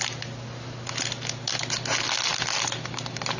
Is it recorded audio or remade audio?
recorded